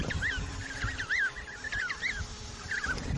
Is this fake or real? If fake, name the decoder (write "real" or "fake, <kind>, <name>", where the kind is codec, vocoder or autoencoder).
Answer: fake, vocoder, BigVGAN v2